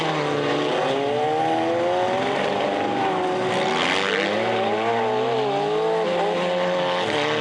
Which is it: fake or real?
real